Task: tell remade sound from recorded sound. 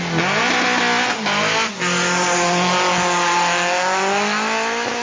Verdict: recorded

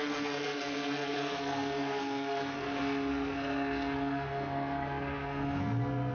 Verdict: remade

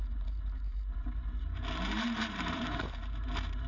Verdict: remade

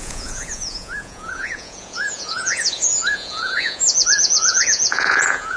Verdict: remade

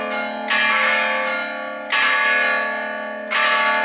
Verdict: recorded